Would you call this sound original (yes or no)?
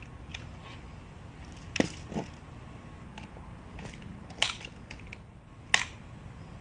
yes